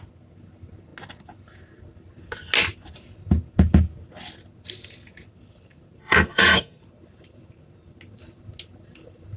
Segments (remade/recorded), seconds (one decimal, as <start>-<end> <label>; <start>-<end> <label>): 0.0-6.0 recorded; 6.0-6.8 remade; 6.8-9.4 recorded